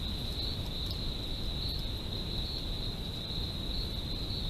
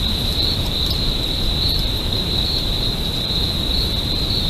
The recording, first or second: first